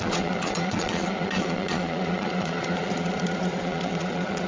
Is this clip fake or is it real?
fake